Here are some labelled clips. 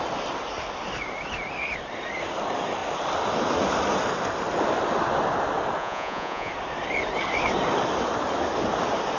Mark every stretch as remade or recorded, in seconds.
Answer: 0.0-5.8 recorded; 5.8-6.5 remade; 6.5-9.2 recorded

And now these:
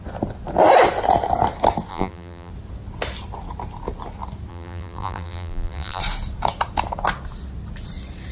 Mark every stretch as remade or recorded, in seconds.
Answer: 0.0-1.9 recorded; 1.9-2.5 remade; 2.5-4.5 recorded; 4.5-6.0 remade; 6.0-8.3 recorded

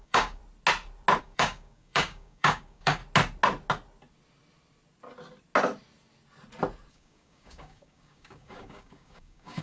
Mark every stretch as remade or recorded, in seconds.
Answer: 0.0-0.4 remade; 0.4-1.2 recorded; 1.2-3.0 remade; 3.0-6.9 recorded; 6.9-9.6 remade

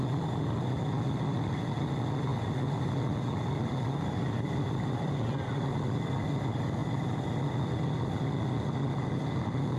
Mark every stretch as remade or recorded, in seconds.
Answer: 0.0-9.8 remade

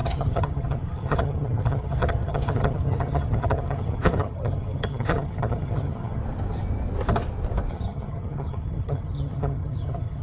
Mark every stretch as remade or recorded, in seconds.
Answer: 0.0-6.2 remade; 6.2-7.7 recorded; 7.7-10.2 remade

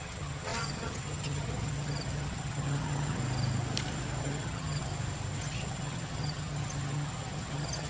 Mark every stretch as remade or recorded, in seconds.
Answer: 0.0-3.2 remade; 3.2-4.2 recorded; 4.2-4.9 remade; 4.9-5.4 recorded; 5.4-7.9 remade

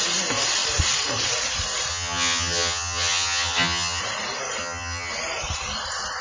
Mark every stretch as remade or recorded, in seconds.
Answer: 0.0-1.9 recorded; 1.9-4.0 remade; 4.0-4.6 recorded; 4.6-5.1 remade; 5.1-6.2 recorded